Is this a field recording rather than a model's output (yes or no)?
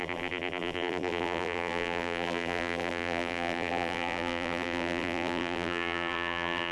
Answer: no